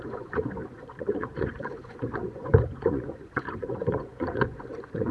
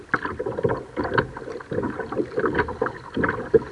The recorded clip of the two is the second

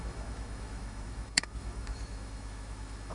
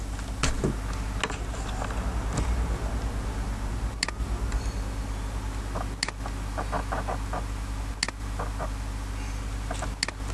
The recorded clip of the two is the second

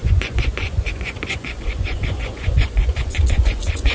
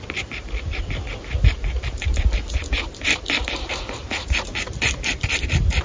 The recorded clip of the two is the second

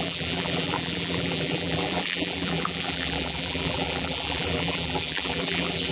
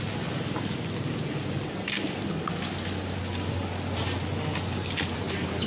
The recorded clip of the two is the second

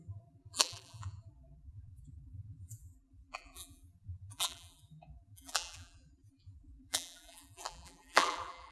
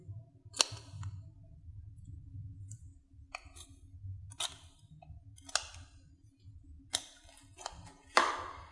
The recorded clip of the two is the second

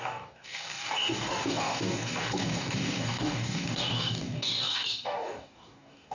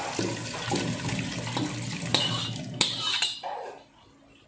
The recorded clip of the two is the second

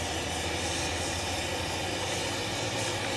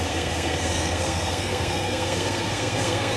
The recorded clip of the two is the first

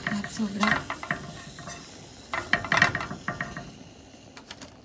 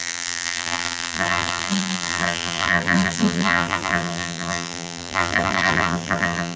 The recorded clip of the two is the first